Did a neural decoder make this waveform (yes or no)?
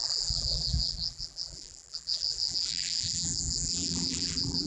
yes